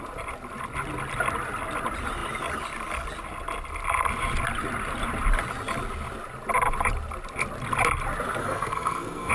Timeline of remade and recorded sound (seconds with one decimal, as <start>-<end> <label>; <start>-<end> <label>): 0.0-8.4 recorded; 8.4-9.3 remade

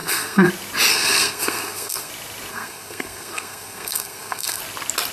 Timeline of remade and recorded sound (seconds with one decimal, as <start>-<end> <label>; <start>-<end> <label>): 0.0-0.5 remade; 0.5-0.9 recorded; 0.9-2.1 remade; 2.1-2.5 recorded; 2.5-4.6 remade; 4.6-5.1 recorded

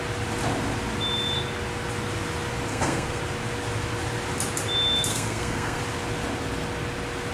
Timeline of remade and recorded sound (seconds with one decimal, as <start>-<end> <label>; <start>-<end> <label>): 0.0-2.7 recorded; 2.7-3.2 remade; 3.2-5.1 recorded; 5.1-5.8 remade; 5.8-7.3 recorded

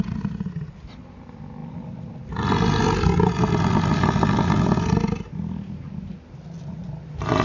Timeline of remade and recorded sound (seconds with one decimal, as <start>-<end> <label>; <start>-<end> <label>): 0.0-7.4 recorded

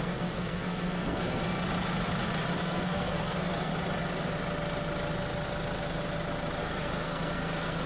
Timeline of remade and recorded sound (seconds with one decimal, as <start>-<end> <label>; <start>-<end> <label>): 0.0-1.4 remade; 1.4-2.6 recorded; 2.6-3.7 remade; 3.7-6.6 recorded; 6.6-7.9 remade